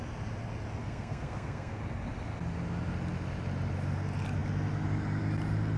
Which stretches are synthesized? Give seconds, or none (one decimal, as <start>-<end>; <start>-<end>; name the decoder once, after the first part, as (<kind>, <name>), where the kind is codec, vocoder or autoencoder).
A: 0.8-1.8 (codec, SNAC)